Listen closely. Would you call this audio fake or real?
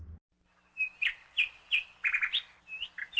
real